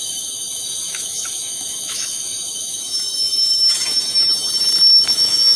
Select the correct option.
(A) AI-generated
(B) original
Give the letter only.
A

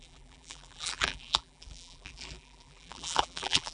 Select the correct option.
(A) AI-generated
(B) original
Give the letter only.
A